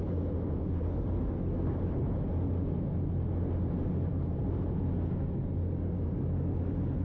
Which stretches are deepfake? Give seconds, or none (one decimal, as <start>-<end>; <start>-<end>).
none